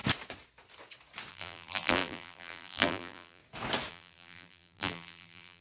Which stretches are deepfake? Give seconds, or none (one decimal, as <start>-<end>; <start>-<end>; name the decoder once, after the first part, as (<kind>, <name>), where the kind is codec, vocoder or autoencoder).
1.3-3.4 (vocoder, BigVGAN v2); 3.9-5.6